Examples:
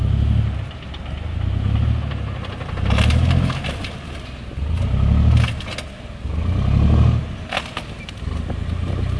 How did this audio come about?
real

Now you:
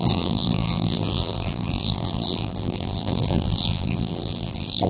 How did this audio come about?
fake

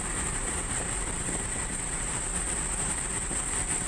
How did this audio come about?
fake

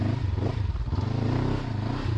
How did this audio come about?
real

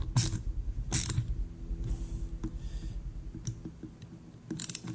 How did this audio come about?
real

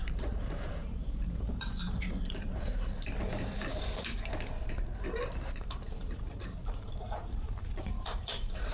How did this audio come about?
fake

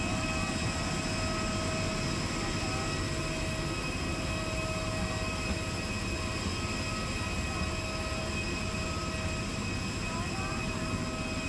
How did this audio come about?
real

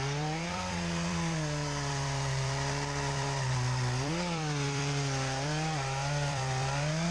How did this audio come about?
fake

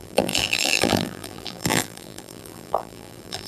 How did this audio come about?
fake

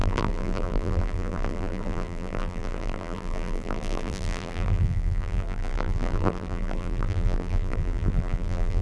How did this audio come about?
fake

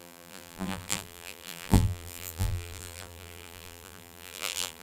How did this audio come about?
fake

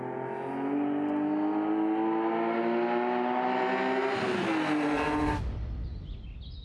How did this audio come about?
real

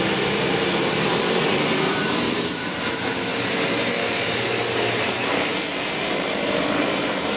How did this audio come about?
fake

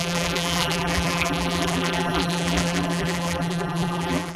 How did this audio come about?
fake